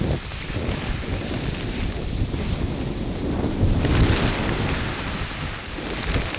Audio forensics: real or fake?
real